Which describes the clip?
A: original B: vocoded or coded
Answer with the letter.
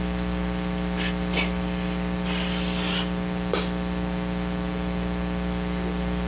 A